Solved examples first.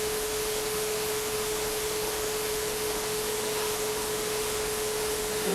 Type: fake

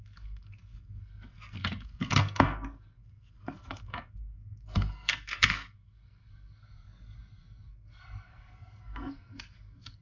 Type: fake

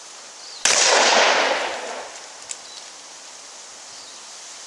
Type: real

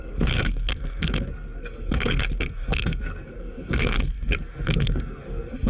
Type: fake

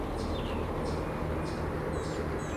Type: real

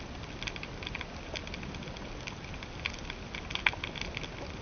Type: real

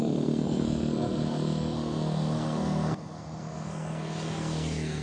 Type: fake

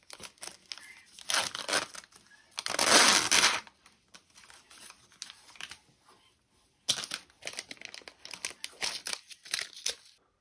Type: real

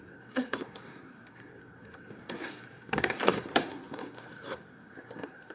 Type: fake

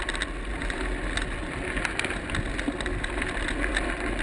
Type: real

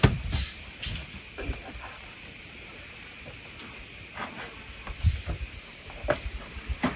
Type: real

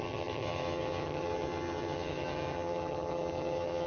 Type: fake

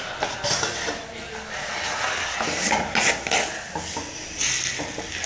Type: real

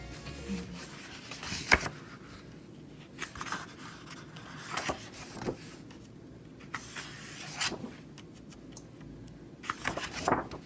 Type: real